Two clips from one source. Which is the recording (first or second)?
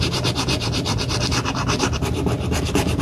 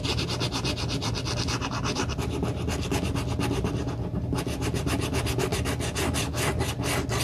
second